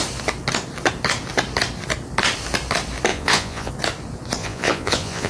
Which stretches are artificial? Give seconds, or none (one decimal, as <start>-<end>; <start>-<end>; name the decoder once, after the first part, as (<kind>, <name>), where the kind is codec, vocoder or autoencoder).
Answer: 3.1-3.7 (vocoder, Vocos); 4.4-5.3